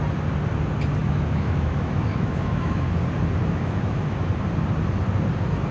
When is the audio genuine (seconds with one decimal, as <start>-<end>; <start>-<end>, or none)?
0.0-1.0; 2.9-3.4; 4.3-5.7